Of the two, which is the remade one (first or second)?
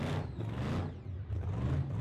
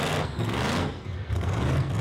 second